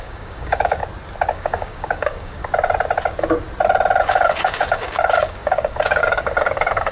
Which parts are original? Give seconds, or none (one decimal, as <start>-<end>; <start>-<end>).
0.8-1.3; 2.4-4.0